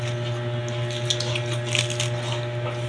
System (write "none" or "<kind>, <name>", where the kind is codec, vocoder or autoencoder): none